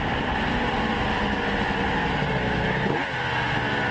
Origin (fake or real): real